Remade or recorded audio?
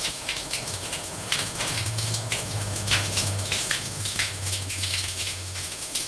remade